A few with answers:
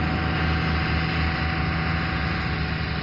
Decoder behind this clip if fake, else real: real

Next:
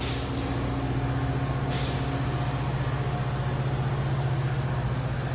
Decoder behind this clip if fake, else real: real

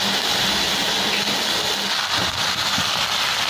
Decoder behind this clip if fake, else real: real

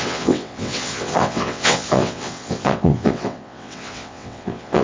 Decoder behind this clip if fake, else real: fake, vocoder, WaveNeXt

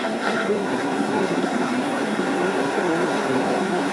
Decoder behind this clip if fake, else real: fake, codec, SNAC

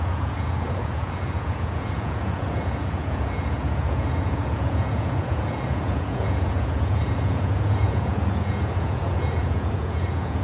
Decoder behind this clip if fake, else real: fake, vocoder, Vocos